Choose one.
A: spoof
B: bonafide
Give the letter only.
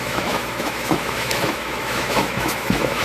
A